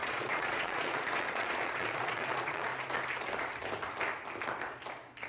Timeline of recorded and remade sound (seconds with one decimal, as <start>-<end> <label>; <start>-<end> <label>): 0.0-2.7 remade; 2.7-5.3 recorded